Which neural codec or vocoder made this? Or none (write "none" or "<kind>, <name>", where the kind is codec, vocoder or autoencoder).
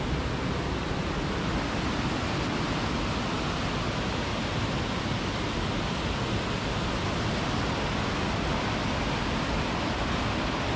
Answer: none